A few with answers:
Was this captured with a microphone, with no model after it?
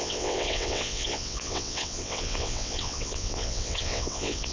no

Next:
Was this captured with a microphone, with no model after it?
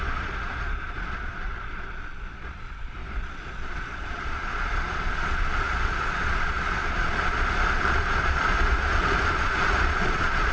no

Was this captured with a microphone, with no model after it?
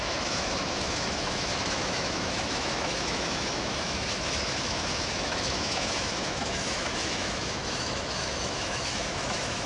no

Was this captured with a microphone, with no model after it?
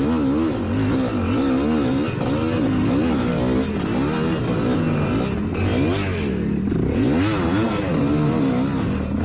yes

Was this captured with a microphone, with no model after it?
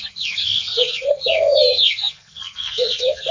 no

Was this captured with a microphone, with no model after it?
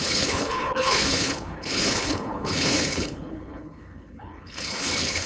no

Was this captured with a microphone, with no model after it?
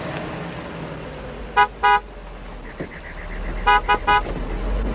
yes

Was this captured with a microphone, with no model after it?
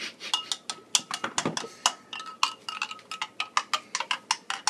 yes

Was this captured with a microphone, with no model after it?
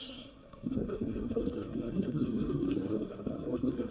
no